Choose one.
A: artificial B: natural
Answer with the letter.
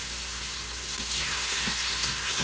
A